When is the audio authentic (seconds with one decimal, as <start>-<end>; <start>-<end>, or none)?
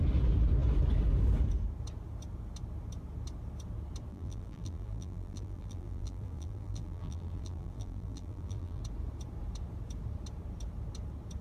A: 0.0-4.1; 8.8-11.4